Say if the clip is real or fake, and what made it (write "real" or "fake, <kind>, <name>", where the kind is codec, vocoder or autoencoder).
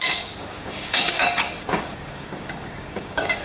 fake, codec, DAC